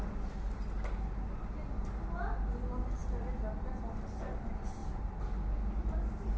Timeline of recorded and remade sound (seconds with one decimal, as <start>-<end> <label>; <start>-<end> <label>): 0.0-6.4 recorded